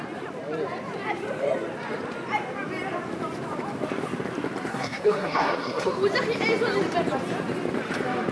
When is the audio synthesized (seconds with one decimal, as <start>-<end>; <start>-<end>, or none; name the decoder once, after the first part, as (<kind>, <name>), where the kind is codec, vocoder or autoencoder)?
4.7-5.9 (codec, SNAC)

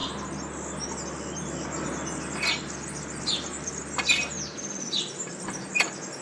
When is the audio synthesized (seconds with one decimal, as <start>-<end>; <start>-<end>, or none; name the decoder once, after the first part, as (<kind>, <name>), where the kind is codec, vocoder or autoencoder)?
none

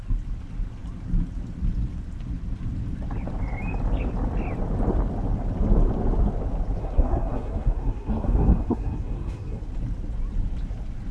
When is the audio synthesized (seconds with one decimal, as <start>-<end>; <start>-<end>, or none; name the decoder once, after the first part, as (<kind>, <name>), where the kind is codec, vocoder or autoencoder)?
6.8-9.6 (codec, SNAC)

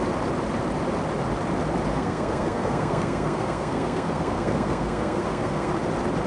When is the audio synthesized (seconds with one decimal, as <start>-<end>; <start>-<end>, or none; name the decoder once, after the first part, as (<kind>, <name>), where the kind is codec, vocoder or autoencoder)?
1.9-5.7 (codec, SNAC)

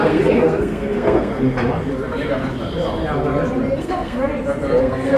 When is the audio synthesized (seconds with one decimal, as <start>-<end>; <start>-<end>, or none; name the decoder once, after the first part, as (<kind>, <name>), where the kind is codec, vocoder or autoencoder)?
0.0-1.3 (codec, SNAC); 3.8-4.3; 4.8-5.2

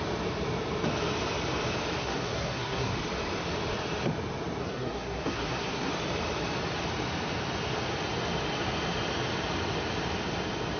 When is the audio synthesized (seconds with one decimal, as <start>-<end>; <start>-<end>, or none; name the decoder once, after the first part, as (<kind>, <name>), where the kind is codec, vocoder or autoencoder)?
2.0-2.9 (codec, SNAC); 4.6-5.9

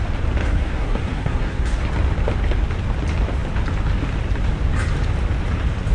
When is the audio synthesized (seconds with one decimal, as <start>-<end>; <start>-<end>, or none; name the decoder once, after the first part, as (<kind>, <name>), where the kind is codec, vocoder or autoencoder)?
0.4-1.8 (codec, SNAC)